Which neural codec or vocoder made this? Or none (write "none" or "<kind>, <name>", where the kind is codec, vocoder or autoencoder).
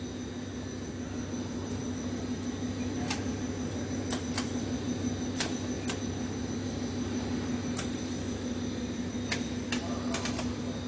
none